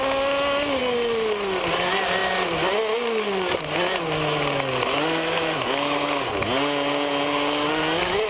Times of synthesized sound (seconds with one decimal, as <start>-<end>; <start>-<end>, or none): none